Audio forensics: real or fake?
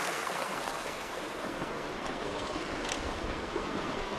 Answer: fake